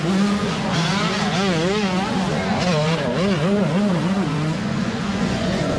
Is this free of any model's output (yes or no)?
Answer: no